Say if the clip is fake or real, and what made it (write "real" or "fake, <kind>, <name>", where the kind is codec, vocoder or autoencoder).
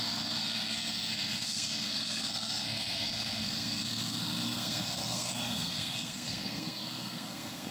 fake, codec, SNAC